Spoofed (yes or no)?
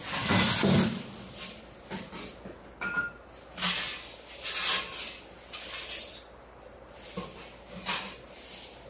no